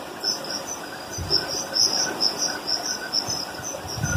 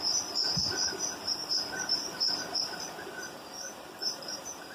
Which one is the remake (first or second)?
second